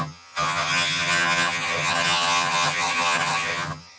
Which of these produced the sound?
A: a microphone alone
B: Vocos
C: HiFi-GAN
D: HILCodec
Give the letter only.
C